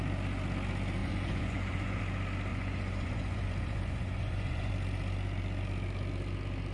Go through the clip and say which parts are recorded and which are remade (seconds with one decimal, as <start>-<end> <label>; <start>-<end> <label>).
0.0-1.0 recorded; 1.0-2.0 remade; 2.0-2.5 recorded; 2.5-4.7 remade; 4.7-6.7 recorded